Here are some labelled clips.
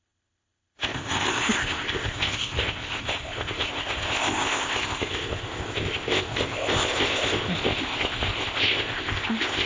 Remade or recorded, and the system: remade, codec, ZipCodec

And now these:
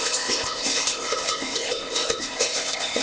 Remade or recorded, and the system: remade, codec, ZipCodec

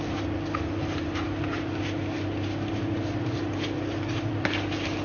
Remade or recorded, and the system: recorded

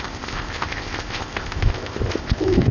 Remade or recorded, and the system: remade, codec, ZipCodec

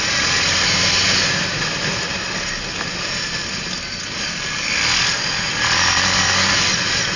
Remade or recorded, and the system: recorded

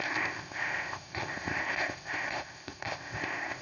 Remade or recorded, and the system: remade, codec, ZipCodec